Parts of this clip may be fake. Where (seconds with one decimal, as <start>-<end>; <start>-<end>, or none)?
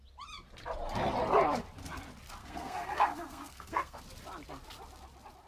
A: 2.4-4.0